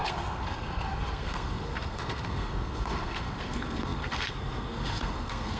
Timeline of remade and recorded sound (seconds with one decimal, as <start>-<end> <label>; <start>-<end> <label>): 0.0-5.6 remade